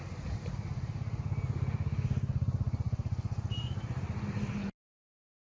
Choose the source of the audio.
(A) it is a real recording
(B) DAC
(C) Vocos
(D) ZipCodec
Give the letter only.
A